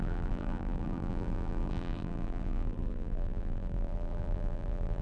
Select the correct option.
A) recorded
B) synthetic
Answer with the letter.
B